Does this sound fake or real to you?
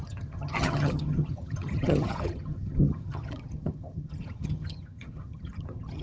fake